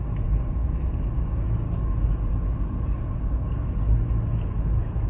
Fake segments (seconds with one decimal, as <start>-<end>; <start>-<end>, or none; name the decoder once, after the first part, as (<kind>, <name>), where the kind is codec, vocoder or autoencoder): none